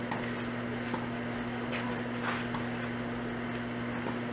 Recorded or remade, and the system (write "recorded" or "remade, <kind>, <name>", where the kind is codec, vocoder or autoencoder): recorded